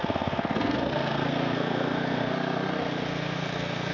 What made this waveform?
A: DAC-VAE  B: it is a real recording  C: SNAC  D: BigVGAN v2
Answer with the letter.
C